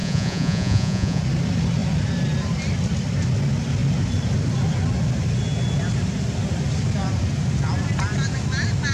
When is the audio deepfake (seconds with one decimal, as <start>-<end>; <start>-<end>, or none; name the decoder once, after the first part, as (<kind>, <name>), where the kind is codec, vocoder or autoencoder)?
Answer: 0.0-1.2 (vocoder, Vocos)